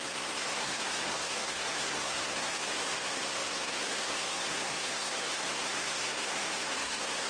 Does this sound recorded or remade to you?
remade